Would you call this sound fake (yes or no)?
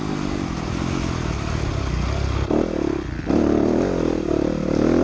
no